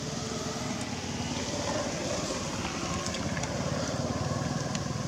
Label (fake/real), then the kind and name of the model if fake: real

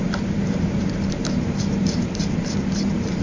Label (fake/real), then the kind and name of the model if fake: fake, vocoder, BigVGAN v2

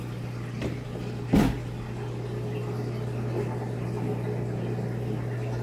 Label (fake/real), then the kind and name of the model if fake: real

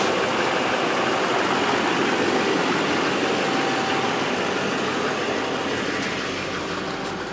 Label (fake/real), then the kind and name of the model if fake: real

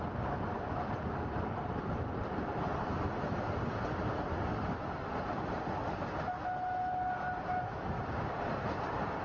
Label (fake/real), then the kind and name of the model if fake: real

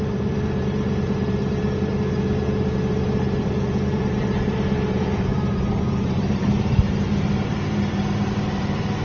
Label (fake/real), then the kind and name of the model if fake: fake, vocoder, BigVGAN v2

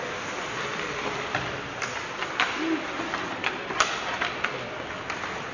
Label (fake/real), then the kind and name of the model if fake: real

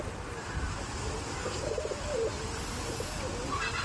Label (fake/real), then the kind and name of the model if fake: real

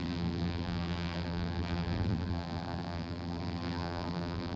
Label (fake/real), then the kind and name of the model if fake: fake, vocoder, BigVGAN v2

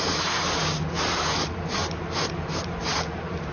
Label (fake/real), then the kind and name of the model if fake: fake, vocoder, BigVGAN v2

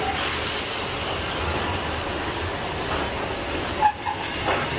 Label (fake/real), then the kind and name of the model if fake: real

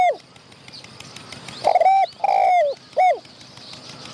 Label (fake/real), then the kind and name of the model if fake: real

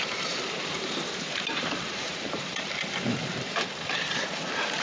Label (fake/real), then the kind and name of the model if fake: fake, vocoder, BigVGAN v2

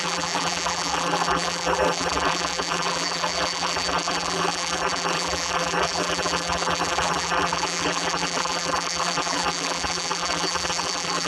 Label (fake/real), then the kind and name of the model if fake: fake, vocoder, BigVGAN v2